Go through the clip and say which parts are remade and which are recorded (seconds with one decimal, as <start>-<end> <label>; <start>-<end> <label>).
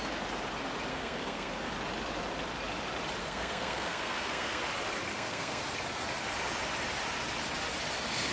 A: 0.0-0.9 recorded; 0.9-1.7 remade; 1.7-3.2 recorded; 3.2-4.6 remade; 4.6-5.1 recorded; 5.1-5.6 remade; 5.6-8.3 recorded